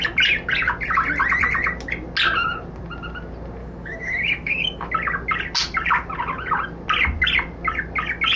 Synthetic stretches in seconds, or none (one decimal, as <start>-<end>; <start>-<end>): 3.6-4.9